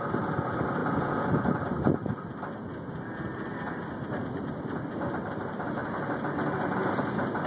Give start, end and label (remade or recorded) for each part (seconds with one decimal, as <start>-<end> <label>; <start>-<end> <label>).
0.0-7.5 recorded